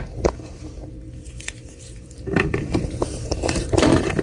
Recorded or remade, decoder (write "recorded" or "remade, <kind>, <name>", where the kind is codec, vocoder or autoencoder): remade, vocoder, BigVGAN v2